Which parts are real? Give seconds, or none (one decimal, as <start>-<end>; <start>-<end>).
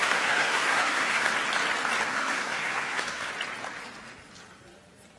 1.3-2.1; 3.3-5.2